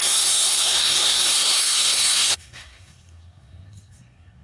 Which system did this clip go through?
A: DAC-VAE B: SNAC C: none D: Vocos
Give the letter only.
B